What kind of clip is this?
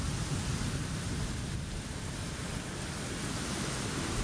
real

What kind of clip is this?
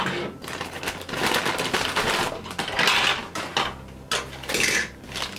real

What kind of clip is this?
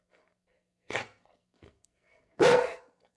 fake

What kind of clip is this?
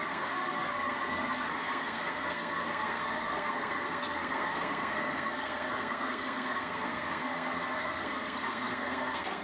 fake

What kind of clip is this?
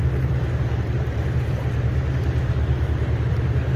fake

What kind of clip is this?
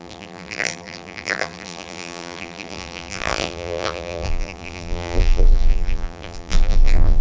fake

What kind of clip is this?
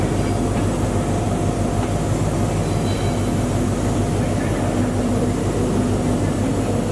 real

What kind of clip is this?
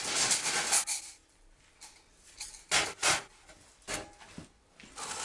real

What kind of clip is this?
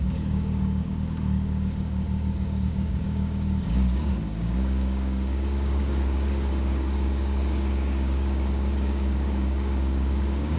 fake